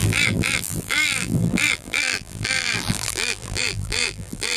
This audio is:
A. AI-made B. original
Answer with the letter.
A